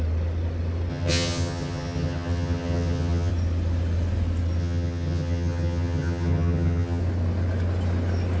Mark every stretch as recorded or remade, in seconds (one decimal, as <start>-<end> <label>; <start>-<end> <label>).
0.0-0.9 recorded; 0.9-3.3 remade; 3.3-4.6 recorded; 4.6-7.0 remade; 7.0-8.4 recorded